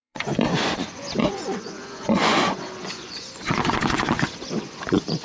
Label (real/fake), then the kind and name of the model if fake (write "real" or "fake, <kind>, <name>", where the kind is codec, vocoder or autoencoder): fake, vocoder, Vocos